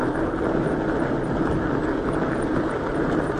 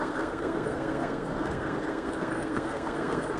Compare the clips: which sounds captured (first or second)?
first